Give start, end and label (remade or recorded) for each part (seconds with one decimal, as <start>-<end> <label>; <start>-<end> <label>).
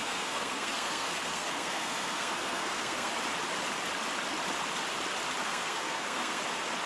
0.0-3.1 remade; 3.1-5.4 recorded; 5.4-6.4 remade; 6.4-6.9 recorded